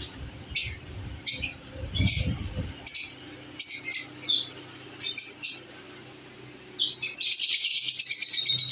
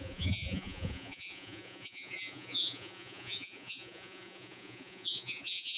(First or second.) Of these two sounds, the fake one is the second